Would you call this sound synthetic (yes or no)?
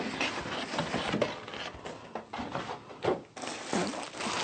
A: no